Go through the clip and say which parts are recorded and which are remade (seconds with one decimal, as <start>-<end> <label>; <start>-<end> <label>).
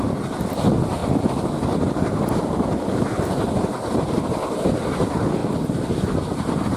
0.0-6.8 recorded